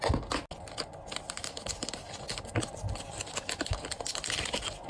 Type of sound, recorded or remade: recorded